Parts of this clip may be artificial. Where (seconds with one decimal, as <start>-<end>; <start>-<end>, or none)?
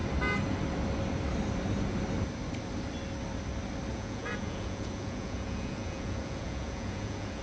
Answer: 3.9-7.4